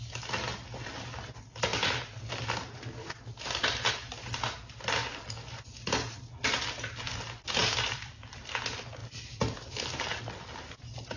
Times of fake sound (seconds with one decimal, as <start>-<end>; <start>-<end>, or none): 1.7-2.4; 7.6-8.2; 9.0-10.2